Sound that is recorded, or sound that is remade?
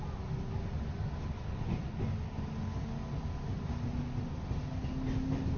recorded